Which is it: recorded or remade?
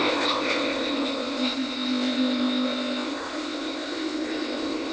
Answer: remade